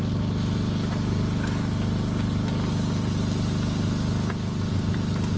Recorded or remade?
recorded